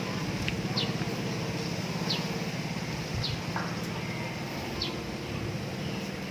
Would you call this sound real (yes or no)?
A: yes